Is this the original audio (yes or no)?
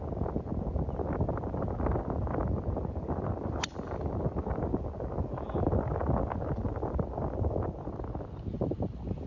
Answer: yes